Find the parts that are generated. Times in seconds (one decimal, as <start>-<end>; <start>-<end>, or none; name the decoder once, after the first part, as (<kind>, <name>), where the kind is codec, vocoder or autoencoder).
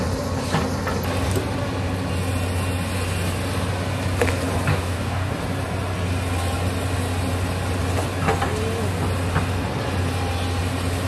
4.7-5.3 (codec, DAC)